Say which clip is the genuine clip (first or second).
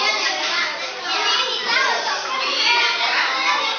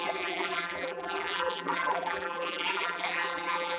first